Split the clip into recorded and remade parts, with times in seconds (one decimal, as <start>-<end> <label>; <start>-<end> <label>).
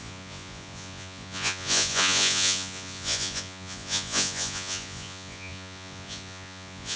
0.0-7.0 remade